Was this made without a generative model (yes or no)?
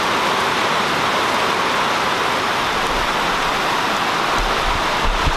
yes